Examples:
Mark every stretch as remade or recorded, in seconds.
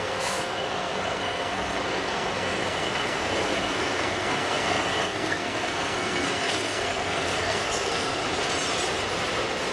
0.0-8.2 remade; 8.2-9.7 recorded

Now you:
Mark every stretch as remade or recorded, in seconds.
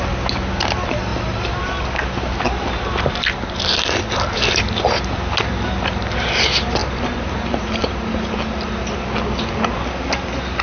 0.0-6.8 recorded; 6.8-8.1 remade; 8.1-10.6 recorded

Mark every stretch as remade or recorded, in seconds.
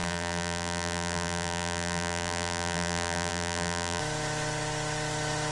0.0-4.0 remade; 4.0-5.5 recorded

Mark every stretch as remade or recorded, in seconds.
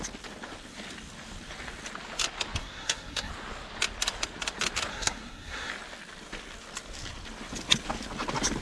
0.0-2.6 recorded; 2.6-3.3 remade; 3.3-4.9 recorded; 4.9-5.7 remade; 5.7-8.6 recorded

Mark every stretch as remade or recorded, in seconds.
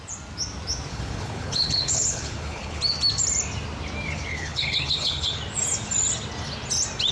0.0-0.9 recorded; 0.9-2.8 remade; 2.8-4.3 recorded; 4.3-5.4 remade; 5.4-7.1 recorded